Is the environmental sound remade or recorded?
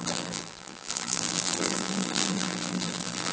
remade